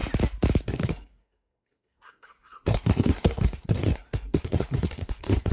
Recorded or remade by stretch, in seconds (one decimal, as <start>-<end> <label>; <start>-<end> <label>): 0.0-0.6 recorded; 0.6-5.5 remade